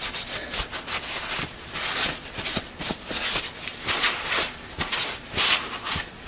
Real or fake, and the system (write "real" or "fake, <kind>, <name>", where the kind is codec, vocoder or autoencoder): real